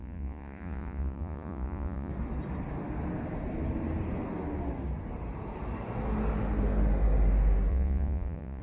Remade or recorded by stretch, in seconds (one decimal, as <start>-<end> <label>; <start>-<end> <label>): 0.0-2.1 remade; 2.1-7.7 recorded; 7.7-8.6 remade

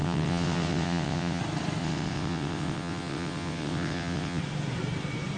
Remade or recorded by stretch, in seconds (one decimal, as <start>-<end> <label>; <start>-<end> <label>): 0.0-1.4 remade; 1.4-1.8 recorded; 1.8-4.4 remade; 4.4-5.4 recorded